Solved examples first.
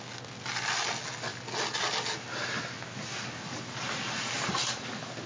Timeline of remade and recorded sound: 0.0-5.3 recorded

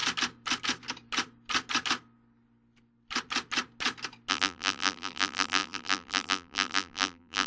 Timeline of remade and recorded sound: 0.0-4.3 recorded; 4.3-7.5 remade

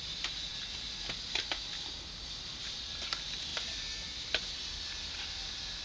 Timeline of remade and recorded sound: 0.0-5.8 recorded

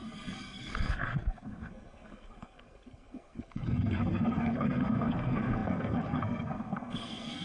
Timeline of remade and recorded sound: 0.0-7.4 remade